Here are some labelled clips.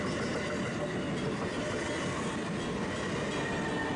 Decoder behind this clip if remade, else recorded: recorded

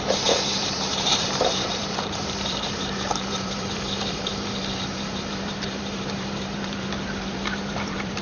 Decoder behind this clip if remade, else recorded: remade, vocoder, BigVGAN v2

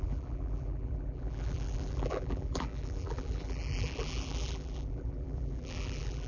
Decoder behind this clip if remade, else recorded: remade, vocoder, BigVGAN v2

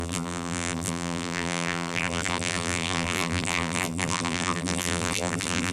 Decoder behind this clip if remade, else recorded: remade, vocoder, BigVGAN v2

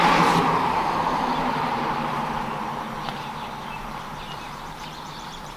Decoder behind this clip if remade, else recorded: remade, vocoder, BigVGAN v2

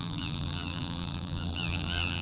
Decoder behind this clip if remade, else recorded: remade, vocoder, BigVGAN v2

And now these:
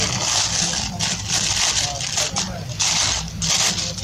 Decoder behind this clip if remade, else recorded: recorded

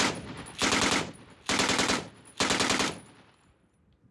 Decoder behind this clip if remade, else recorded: recorded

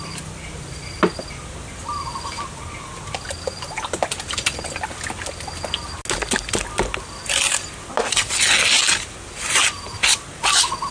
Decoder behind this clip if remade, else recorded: recorded